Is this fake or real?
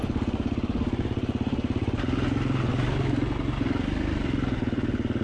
real